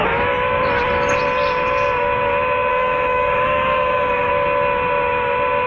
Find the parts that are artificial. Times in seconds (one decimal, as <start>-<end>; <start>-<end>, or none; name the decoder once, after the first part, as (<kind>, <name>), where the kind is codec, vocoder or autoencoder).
2.7-4.3 (codec, DAC)